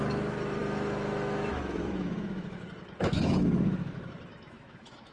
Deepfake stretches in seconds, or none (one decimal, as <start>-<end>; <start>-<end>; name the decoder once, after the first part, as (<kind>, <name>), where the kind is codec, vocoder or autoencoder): 0.0-5.1 (autoencoder, DAC-VAE)